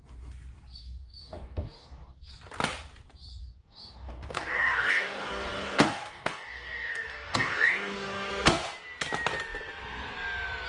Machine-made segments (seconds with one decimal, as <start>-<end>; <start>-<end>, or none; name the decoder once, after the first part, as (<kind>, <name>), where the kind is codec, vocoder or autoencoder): 0.8-2.3 (codec, DAC); 3.4-8.3